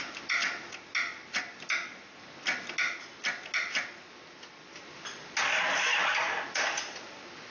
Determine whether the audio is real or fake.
real